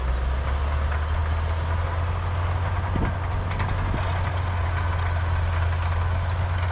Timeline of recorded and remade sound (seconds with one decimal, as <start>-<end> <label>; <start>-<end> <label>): 0.0-6.7 recorded